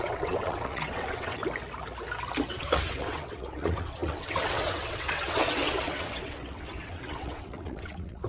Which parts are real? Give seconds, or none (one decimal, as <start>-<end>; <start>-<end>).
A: 1.4-2.6